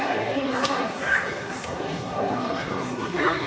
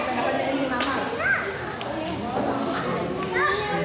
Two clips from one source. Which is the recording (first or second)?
second